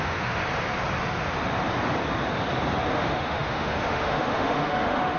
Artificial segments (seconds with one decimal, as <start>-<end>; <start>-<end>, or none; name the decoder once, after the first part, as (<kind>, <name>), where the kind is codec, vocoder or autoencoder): 0.0-0.4 (autoencoder, DAC-VAE); 2.9-5.2